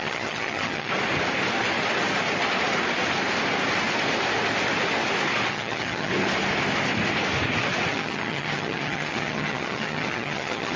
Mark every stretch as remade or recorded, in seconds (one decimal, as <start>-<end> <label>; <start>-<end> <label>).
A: 0.0-0.9 remade; 0.9-5.5 recorded; 5.5-6.1 remade; 6.1-7.9 recorded; 7.9-10.8 remade